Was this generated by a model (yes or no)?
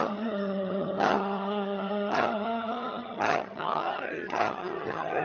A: yes